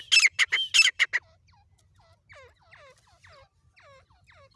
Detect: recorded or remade recorded